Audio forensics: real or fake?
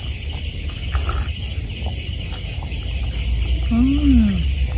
real